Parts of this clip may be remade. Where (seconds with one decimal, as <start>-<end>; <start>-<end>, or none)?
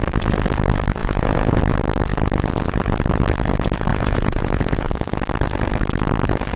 1.0-1.6; 3.9-4.9